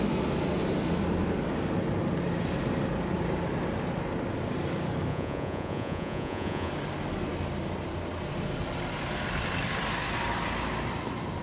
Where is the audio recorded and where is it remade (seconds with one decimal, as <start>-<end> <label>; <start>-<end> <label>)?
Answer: 0.0-5.1 recorded; 5.1-6.7 remade; 6.7-11.4 recorded